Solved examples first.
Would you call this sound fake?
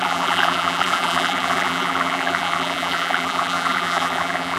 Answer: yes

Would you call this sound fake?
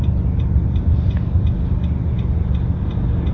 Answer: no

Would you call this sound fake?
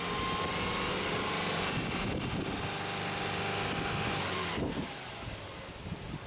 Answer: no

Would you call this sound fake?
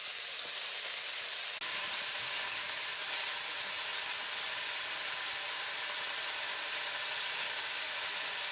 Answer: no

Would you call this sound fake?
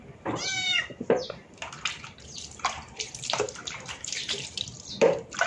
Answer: yes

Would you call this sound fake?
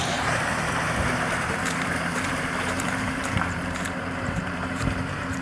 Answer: yes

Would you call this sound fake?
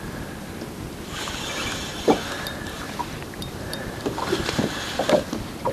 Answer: yes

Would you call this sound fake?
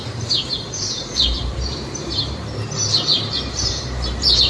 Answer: yes